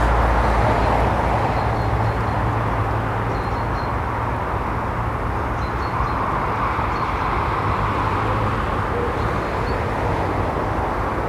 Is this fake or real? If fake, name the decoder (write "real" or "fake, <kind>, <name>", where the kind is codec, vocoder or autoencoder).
real